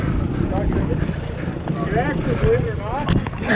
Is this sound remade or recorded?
recorded